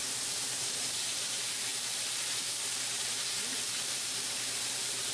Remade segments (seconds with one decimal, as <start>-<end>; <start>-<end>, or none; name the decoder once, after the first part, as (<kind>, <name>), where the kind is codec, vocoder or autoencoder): 0.0-5.1 (vocoder, BigVGAN v2)